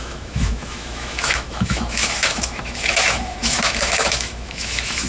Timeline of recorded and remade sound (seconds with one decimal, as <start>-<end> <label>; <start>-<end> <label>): 0.0-5.1 remade